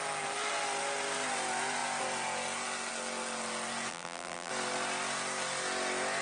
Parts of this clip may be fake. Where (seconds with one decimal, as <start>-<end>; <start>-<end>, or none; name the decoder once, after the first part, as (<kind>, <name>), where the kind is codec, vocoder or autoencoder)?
3.9-4.5 (vocoder, BigVGAN v2)

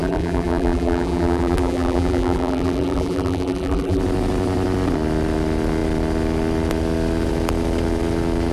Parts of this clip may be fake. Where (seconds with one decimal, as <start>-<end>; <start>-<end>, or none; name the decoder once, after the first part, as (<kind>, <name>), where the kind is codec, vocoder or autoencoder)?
0.0-4.0 (vocoder, BigVGAN v2)